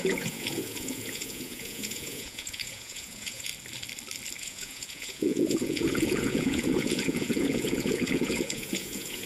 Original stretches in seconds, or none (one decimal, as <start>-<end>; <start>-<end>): 3.5-4.4